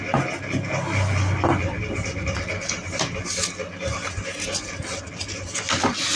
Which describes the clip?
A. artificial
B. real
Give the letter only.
B